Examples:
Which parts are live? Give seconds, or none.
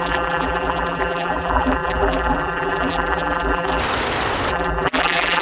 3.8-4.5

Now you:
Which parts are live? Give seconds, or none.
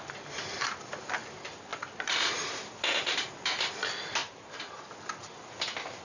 0.0-1.7; 3.3-4.2; 4.9-6.0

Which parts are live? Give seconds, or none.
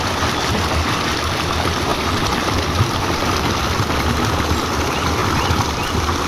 0.0-1.9; 3.6-5.2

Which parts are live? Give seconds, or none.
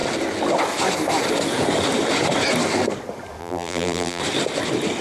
0.0-3.4; 4.2-5.0